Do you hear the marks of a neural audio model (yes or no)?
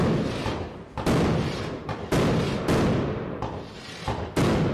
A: no